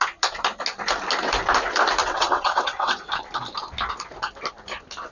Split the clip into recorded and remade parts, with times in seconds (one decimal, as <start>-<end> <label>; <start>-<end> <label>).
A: 0.0-2.0 recorded; 2.0-3.1 remade; 3.1-5.1 recorded